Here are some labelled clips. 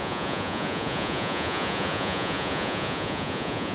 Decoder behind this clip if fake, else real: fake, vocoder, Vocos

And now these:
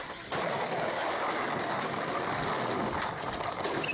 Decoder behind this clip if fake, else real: real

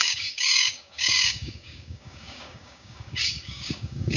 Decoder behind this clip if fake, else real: fake, codec, DAC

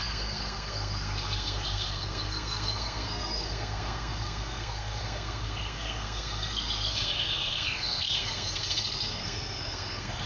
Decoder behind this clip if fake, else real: fake, codec, SNAC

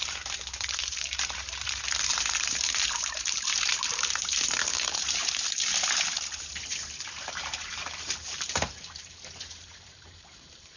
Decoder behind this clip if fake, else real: fake, vocoder, BigVGAN v2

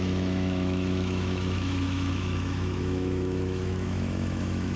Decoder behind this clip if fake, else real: fake, autoencoder, DAC-VAE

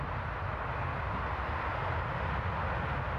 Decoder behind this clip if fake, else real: real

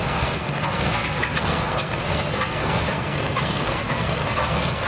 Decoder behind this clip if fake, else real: fake, codec, SNAC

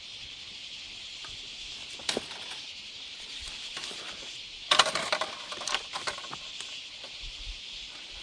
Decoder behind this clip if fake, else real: real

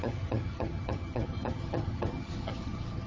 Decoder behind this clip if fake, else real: fake, vocoder, HiFi-GAN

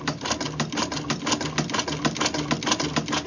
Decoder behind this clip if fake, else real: real